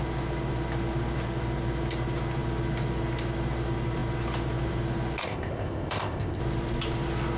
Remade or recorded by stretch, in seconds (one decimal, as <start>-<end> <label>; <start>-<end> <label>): 0.0-5.2 recorded; 5.2-6.4 remade; 6.4-7.4 recorded